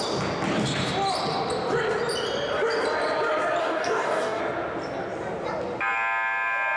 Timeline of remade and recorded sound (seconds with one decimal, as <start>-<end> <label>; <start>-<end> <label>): 0.0-3.6 recorded; 3.6-4.4 remade; 4.4-6.8 recorded